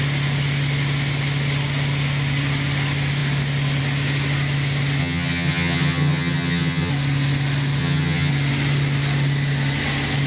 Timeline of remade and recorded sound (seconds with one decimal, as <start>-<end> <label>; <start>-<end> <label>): 0.0-5.0 recorded; 5.0-6.9 remade; 6.9-7.8 recorded; 7.8-8.3 remade; 8.3-10.3 recorded